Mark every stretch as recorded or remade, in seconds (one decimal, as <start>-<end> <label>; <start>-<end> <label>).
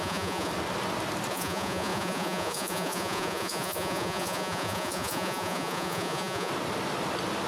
0.0-0.5 remade; 0.5-1.3 recorded; 1.3-6.5 remade; 6.5-7.5 recorded